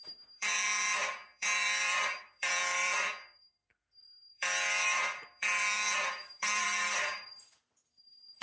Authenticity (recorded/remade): remade